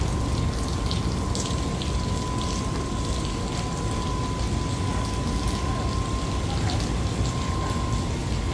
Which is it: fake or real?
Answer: real